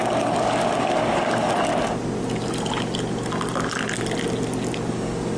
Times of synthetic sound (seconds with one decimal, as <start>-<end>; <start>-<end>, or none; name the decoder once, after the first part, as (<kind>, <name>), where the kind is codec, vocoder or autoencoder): 0.0-1.7 (codec, DAC); 4.9-5.4